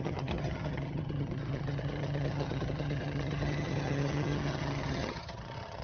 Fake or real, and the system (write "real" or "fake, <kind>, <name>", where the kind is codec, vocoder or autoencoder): fake, vocoder, HiFi-GAN